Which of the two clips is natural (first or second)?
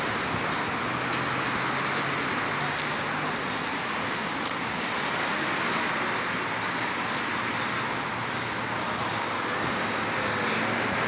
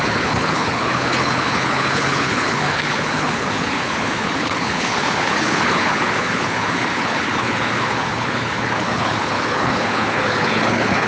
first